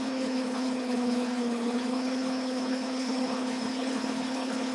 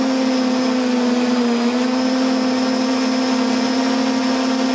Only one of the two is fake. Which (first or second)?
first